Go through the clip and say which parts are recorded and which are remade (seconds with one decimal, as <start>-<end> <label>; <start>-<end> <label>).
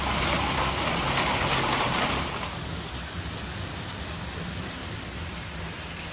0.0-0.4 recorded; 0.4-4.1 remade; 4.1-4.8 recorded; 4.8-5.5 remade; 5.5-6.1 recorded